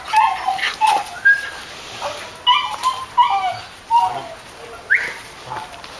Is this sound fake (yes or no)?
no